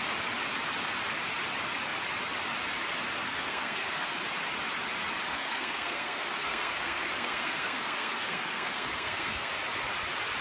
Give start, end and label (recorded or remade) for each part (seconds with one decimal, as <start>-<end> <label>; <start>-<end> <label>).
0.0-3.2 recorded; 3.2-4.2 remade; 4.2-5.3 recorded; 5.3-9.5 remade; 9.5-10.4 recorded